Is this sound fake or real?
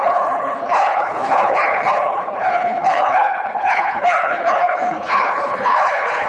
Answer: fake